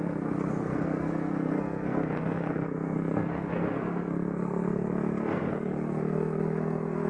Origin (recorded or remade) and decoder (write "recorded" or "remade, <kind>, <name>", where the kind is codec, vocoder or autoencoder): remade, codec, SNAC